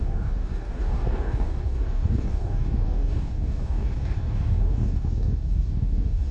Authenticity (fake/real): fake